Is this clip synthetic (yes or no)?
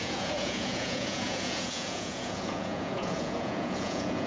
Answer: yes